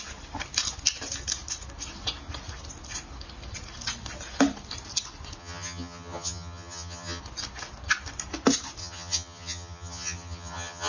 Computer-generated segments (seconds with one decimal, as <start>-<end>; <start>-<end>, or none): 5.4-7.2; 8.8-10.9